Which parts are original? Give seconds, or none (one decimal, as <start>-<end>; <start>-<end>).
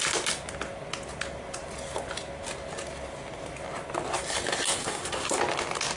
0.0-4.8; 5.4-6.0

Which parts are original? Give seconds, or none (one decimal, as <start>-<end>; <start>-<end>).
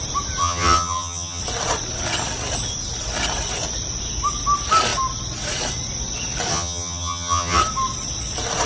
0.0-0.4; 1.4-6.5; 7.6-8.7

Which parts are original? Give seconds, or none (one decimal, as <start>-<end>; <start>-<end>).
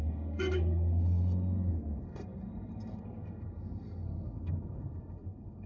none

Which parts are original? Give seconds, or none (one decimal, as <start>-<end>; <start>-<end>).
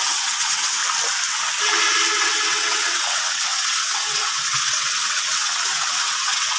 0.8-2.2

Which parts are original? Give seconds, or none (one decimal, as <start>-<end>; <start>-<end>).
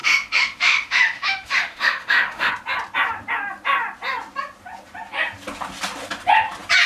2.5-6.9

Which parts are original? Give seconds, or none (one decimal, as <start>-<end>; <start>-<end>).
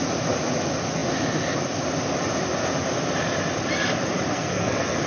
0.0-4.3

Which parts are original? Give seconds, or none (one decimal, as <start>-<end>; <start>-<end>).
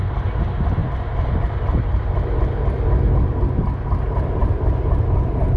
0.0-0.8; 2.0-4.4